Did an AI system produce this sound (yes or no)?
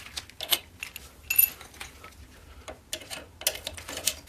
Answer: no